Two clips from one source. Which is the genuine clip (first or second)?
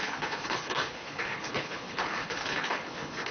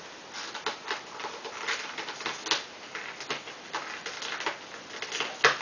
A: second